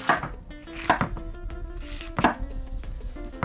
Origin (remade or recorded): recorded